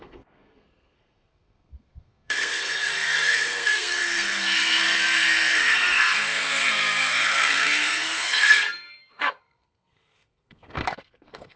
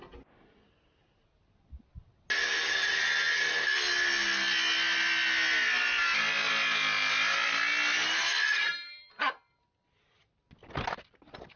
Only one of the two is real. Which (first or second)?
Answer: second